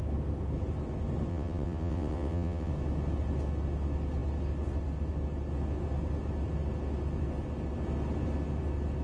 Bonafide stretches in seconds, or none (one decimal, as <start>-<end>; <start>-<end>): 0.0-1.3; 2.7-9.0